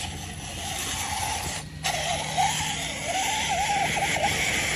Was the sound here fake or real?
real